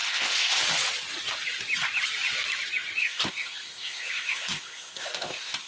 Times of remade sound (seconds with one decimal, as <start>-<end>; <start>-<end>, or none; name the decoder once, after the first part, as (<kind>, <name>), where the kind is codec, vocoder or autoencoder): 0.0-0.6 (codec, ZipCodec); 3.0-5.7